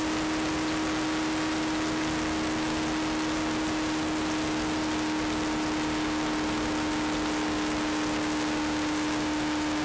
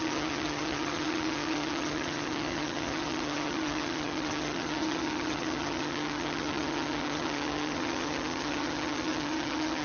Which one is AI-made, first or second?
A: second